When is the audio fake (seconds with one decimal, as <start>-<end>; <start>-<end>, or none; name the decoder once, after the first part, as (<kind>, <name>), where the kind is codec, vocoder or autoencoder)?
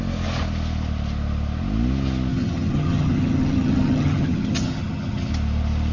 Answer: 2.3-5.3 (vocoder, HiFi-GAN)